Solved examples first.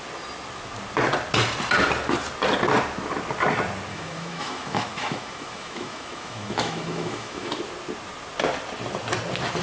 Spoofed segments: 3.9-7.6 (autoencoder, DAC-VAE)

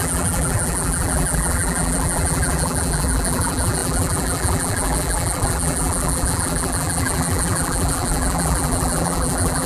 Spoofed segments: 0.0-9.7 (vocoder, BigVGAN v2)

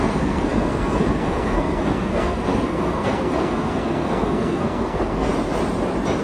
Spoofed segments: 0.0-5.3 (codec, SNAC)

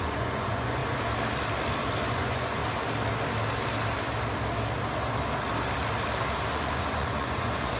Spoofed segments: 0.0-0.8 (vocoder, Vocos); 2.1-2.6; 6.5-7.8

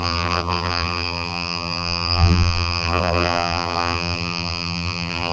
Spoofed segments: 0.0-5.3 (vocoder, BigVGAN v2)

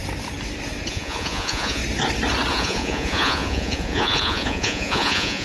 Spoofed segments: 0.9-1.8 (vocoder, Vocos); 2.5-5.4